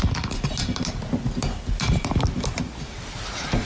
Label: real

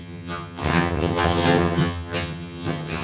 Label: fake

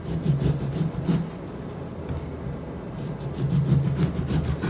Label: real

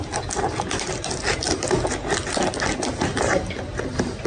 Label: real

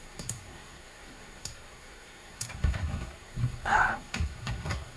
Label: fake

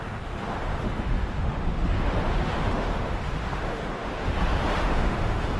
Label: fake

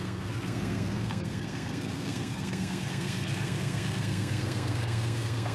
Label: fake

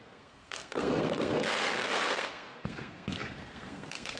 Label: fake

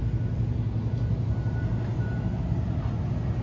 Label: real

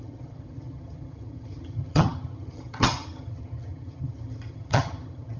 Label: fake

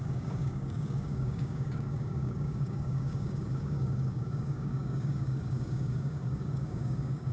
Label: fake